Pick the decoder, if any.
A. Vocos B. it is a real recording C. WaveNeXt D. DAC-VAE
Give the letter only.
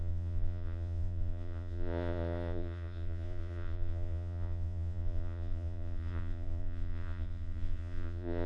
A